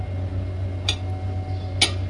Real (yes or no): yes